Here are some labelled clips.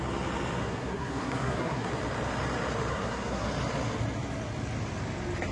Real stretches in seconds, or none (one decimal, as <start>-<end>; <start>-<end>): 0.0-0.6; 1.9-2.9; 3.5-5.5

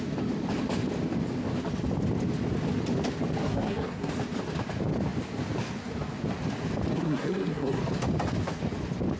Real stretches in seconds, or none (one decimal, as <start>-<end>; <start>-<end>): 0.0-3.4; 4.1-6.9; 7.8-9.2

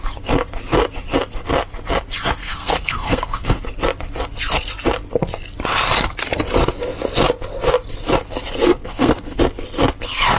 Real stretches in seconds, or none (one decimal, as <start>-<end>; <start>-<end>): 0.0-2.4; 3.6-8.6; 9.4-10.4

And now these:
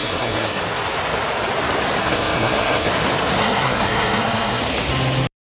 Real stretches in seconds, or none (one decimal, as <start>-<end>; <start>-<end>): 0.6-2.0; 2.9-3.4; 4.6-5.5

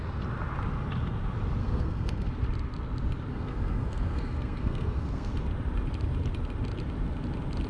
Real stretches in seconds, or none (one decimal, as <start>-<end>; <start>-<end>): 0.0-1.6; 2.3-3.3; 5.3-7.7

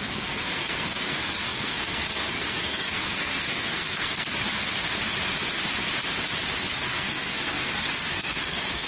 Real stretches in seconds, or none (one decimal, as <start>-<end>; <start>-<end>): 4.3-6.6

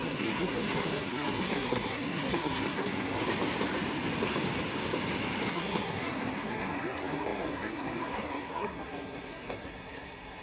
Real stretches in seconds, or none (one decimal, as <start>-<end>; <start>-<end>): 3.2-5.5

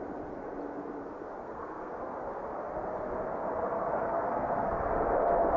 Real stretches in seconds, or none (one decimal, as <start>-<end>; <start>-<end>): 0.0-1.4; 1.9-3.7; 4.8-5.6